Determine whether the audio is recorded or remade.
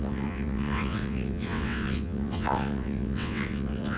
remade